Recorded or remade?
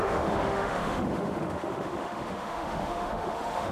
remade